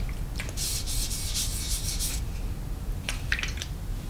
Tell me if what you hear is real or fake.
real